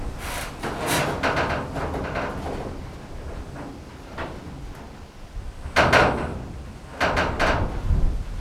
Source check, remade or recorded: recorded